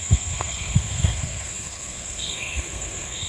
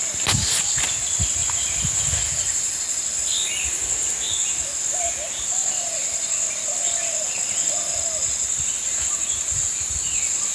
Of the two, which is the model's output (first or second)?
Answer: first